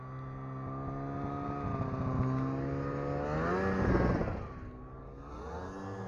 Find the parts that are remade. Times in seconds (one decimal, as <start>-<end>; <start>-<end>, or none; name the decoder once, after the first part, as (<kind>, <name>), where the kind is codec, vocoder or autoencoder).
none